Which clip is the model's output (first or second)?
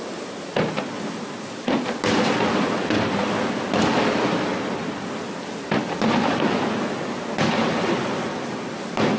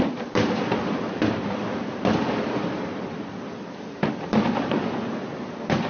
second